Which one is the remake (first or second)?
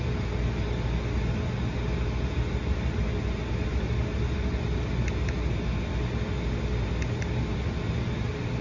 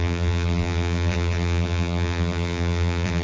second